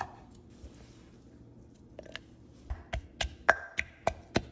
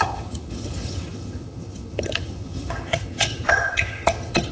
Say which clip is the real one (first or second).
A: first